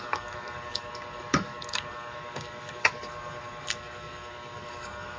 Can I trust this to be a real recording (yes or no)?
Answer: no